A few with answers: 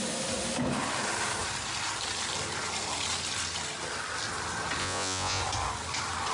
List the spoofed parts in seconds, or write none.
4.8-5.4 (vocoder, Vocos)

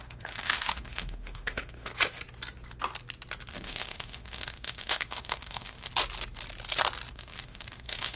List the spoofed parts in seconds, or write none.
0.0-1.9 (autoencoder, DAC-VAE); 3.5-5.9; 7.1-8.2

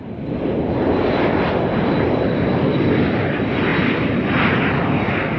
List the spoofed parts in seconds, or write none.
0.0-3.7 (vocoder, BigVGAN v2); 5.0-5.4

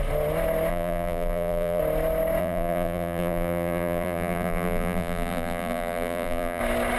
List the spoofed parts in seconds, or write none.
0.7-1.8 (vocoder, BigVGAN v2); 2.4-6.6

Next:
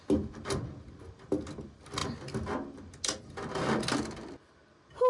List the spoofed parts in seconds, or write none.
none